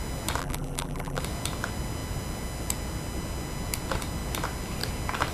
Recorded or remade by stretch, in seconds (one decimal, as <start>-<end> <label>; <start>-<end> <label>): 0.0-0.4 recorded; 0.4-1.2 remade; 1.2-5.3 recorded